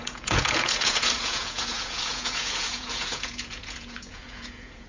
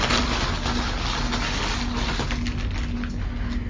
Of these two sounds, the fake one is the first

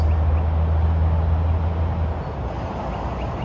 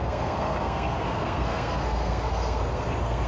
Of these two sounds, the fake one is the second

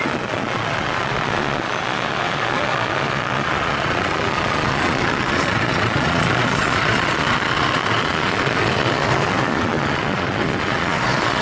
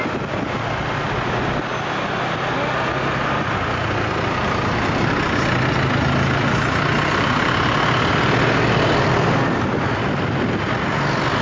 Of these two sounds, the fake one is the first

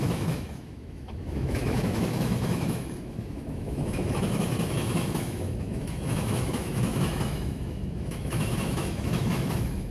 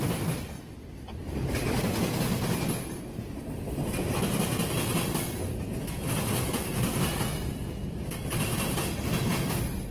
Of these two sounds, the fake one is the first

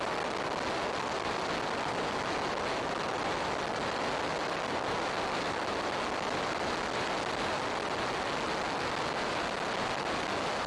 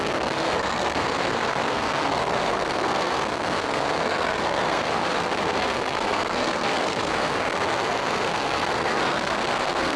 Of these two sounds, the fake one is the second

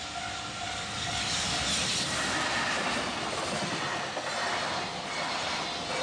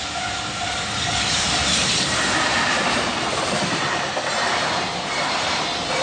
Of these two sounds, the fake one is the second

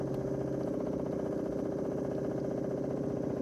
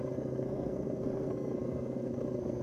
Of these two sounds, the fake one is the second